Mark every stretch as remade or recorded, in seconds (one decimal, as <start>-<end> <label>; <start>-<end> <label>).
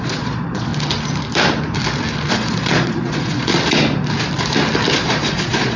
0.0-0.7 remade; 0.7-2.3 recorded; 2.3-3.5 remade; 3.5-4.9 recorded; 4.9-5.8 remade